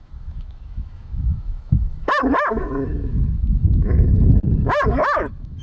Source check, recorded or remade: remade